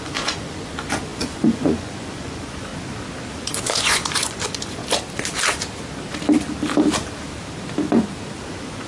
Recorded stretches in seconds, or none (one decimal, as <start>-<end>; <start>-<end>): 2.7-3.6; 4.8-8.5